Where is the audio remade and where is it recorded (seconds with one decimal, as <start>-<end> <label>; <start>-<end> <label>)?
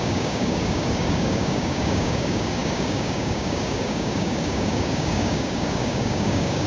0.0-6.7 remade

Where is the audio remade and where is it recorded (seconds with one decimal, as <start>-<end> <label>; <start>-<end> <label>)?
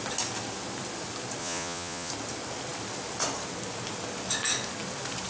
0.0-1.4 recorded; 1.4-2.1 remade; 2.1-5.3 recorded